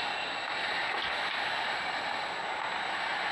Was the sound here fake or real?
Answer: real